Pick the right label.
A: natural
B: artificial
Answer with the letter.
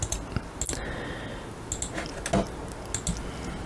A